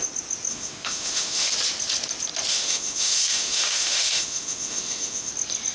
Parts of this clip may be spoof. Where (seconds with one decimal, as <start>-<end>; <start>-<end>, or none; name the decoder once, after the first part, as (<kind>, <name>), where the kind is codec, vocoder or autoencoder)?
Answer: 0.5-1.5 (autoencoder, DAC-VAE); 2.5-5.3